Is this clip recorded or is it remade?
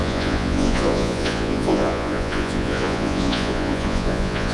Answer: remade